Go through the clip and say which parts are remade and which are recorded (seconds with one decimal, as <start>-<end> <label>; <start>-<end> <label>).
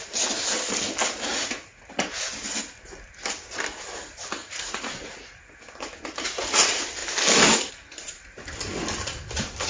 0.0-1.3 recorded; 1.3-2.0 remade; 2.0-4.4 recorded; 4.4-5.4 remade; 5.4-9.7 recorded